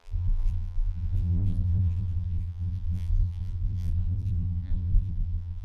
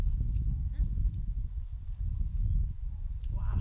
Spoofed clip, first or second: first